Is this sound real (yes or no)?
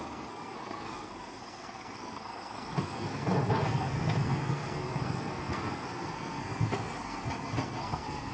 no